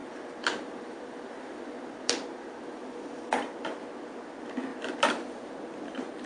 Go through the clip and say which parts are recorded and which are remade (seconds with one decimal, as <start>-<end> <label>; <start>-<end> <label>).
0.0-3.8 remade; 3.8-6.3 recorded